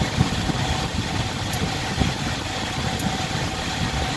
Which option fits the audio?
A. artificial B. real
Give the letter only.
B